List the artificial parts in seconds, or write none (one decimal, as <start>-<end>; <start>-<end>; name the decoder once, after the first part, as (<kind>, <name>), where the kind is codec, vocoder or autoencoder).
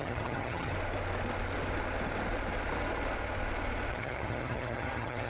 0.0-0.7 (vocoder, HiFi-GAN); 3.9-5.3